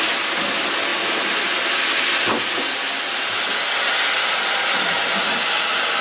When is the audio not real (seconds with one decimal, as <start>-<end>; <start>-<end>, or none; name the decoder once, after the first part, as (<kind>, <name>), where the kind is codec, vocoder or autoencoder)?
none